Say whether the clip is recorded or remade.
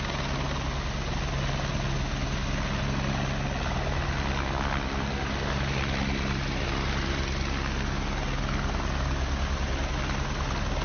recorded